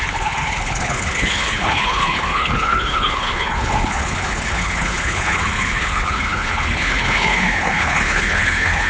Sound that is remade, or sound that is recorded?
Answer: remade